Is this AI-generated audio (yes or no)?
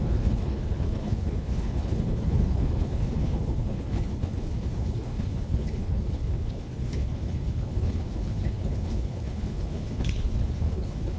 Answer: yes